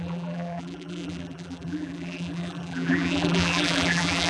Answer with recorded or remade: remade